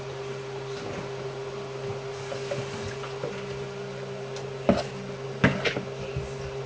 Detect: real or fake real